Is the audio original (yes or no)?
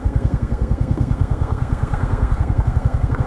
no